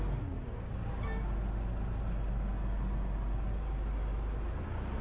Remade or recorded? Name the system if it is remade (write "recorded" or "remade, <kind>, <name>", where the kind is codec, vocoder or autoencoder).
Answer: recorded